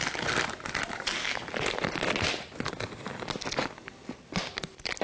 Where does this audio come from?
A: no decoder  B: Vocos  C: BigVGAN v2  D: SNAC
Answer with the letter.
A